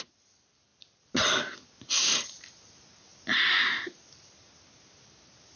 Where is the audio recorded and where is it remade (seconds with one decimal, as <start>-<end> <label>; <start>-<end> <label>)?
0.0-5.6 recorded